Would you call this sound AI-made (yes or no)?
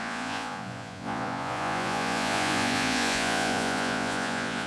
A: yes